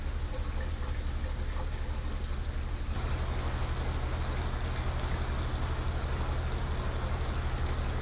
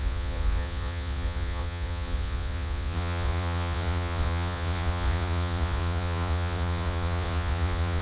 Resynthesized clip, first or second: second